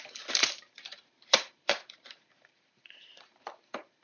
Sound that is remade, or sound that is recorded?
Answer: remade